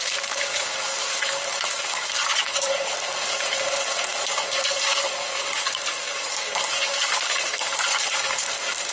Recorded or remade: remade